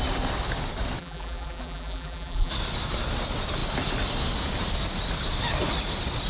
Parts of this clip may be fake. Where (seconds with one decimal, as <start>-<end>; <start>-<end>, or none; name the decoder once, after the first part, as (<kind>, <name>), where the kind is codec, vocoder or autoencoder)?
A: 1.0-2.5 (vocoder, BigVGAN v2)